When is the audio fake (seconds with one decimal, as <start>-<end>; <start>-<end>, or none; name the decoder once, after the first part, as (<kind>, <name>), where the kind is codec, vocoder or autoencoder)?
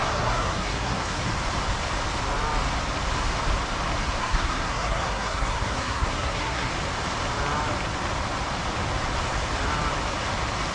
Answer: 0.0-1.2 (codec, SNAC); 4.2-6.7